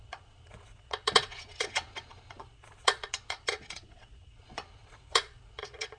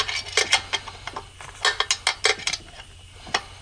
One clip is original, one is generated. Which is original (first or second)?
second